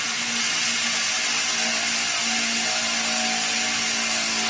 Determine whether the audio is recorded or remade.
recorded